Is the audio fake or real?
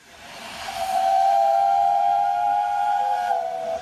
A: fake